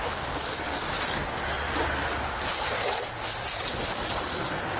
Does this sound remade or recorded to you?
recorded